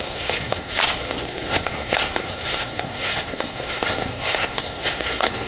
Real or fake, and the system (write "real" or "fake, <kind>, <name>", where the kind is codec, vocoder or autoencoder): fake, codec, SNAC